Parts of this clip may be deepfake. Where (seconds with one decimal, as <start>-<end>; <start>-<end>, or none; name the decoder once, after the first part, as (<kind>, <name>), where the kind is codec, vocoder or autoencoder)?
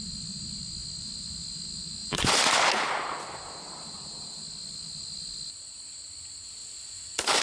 2.0-4.4 (vocoder, BigVGAN v2)